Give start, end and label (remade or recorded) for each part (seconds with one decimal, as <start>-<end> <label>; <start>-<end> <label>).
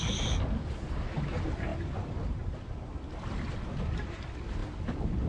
0.0-1.7 recorded; 1.7-3.8 remade; 3.8-4.6 recorded; 4.6-5.3 remade